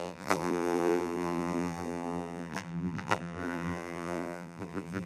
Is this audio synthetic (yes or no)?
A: yes